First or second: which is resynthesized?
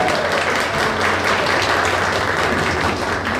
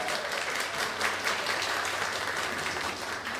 second